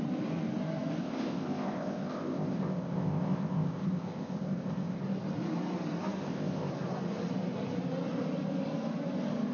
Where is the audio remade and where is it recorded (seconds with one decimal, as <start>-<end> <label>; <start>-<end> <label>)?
0.0-1.0 recorded; 1.0-5.0 remade; 5.0-6.2 recorded; 6.2-6.7 remade; 6.7-9.5 recorded